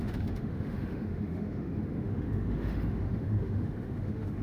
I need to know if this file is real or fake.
fake